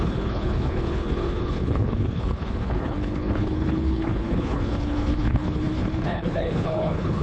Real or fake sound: fake